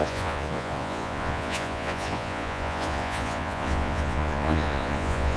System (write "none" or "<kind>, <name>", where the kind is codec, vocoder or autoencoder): vocoder, Vocos